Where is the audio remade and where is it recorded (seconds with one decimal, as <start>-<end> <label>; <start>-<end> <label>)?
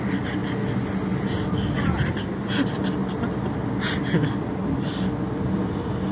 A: 0.0-6.1 recorded